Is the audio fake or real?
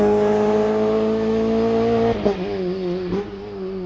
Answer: real